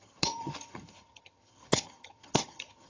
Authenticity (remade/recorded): remade